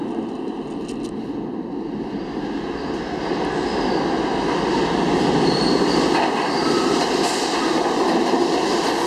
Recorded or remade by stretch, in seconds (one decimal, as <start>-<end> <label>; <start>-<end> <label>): 0.0-0.6 remade; 0.6-9.1 recorded